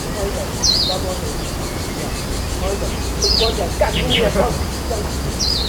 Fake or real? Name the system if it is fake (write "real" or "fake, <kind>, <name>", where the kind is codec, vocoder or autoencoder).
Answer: real